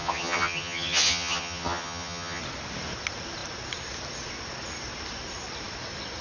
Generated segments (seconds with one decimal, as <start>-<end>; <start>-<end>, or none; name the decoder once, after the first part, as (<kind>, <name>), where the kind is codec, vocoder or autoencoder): 0.0-2.4 (vocoder, HiFi-GAN)